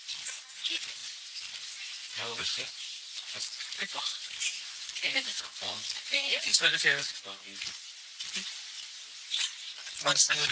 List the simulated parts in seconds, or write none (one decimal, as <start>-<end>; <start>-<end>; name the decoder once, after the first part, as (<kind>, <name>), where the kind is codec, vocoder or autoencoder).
none

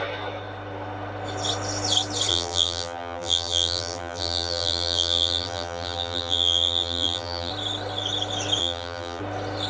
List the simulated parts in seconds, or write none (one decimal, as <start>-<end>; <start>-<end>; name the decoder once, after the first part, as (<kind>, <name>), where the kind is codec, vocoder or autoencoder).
2.3-7.5 (vocoder, BigVGAN v2); 8.6-9.2

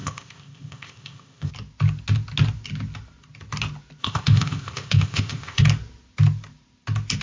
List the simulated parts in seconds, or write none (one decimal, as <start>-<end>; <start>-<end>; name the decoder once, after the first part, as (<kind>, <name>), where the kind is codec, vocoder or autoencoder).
0.0-1.5 (codec, ZipCodec); 4.0-5.6

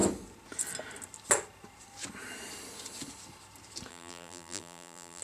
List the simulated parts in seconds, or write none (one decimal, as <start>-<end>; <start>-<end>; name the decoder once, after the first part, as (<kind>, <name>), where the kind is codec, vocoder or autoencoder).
3.9-5.2 (vocoder, BigVGAN v2)